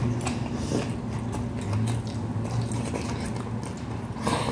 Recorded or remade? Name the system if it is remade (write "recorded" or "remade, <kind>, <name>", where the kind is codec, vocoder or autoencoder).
recorded